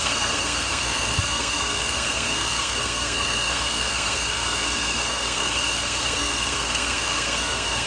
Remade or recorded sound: remade